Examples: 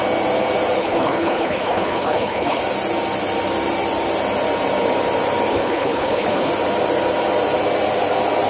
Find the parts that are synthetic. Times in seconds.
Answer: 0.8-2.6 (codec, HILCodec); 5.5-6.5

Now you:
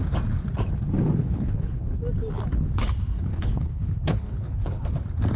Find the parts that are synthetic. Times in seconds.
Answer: 1.2-2.0 (codec, HILCodec); 3.3-4.8

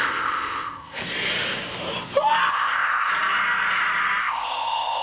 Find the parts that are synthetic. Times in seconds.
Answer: 0.0-1.0 (codec, ZipCodec); 2.5-3.1; 4.2-5.0

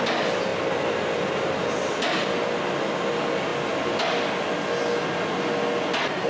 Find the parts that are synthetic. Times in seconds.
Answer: none

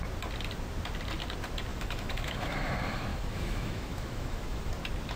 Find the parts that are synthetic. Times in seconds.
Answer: 1.7-2.7 (autoencoder, DAC-VAE); 3.1-4.7